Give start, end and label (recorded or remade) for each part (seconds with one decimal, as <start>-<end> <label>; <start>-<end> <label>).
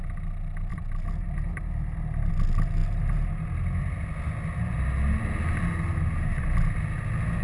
0.0-7.4 recorded